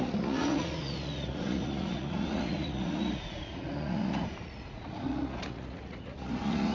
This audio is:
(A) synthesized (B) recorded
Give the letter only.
A